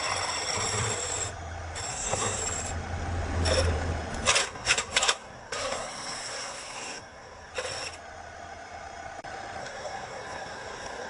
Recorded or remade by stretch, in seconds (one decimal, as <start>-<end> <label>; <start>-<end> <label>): 0.0-1.9 recorded; 1.9-2.4 remade; 2.4-4.4 recorded; 4.4-7.5 remade; 7.5-9.6 recorded; 9.6-11.1 remade